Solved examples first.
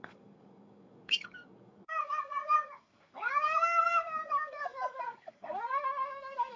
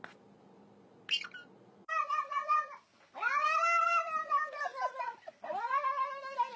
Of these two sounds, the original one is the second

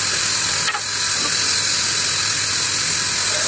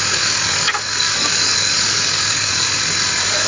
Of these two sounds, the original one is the first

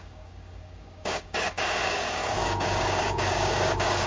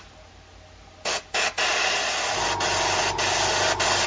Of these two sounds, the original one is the second